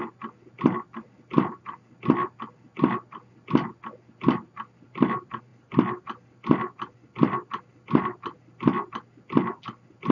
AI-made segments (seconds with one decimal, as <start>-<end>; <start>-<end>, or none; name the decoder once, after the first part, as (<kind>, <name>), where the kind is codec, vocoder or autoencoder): none